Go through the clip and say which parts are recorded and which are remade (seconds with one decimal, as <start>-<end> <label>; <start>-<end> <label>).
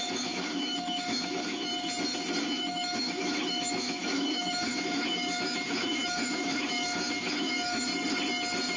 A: 0.0-1.7 remade; 1.7-2.4 recorded; 2.4-7.9 remade; 7.9-8.8 recorded